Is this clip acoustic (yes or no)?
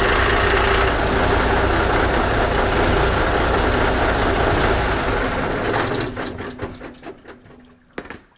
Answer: yes